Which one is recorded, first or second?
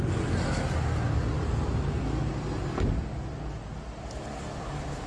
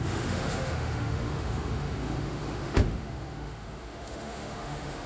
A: first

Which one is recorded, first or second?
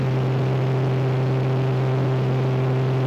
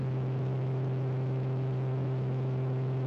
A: first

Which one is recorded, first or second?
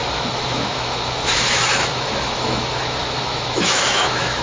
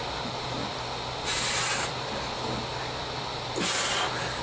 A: second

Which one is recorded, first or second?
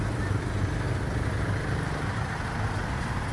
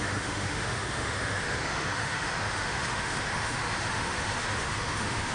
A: first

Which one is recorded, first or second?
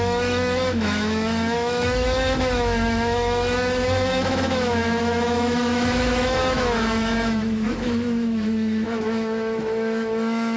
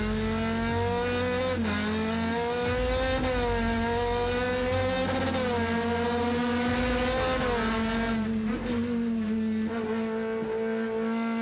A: second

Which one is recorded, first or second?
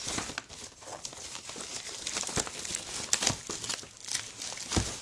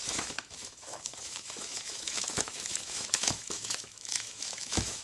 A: first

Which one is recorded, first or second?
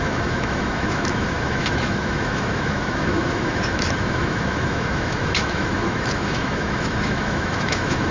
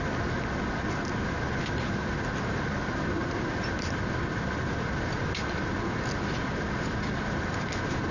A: second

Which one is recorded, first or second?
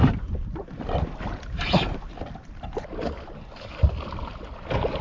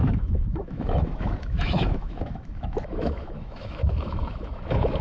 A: first